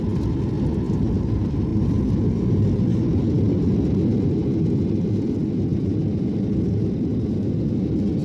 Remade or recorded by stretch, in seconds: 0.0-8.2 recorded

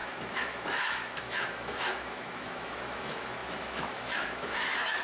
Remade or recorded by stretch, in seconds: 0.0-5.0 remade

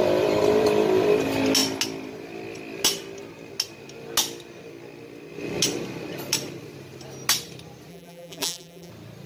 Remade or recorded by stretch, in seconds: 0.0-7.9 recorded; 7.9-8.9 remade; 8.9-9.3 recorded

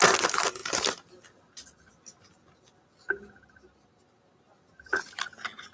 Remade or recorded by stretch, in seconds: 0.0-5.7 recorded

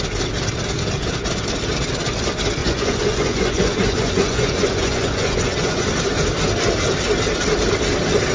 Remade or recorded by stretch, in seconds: 0.0-2.6 recorded; 2.6-5.9 remade; 5.9-8.3 recorded